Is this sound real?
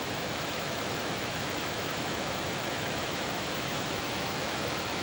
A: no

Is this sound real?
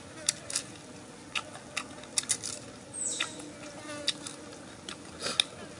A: yes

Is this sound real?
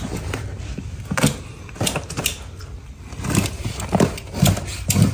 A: yes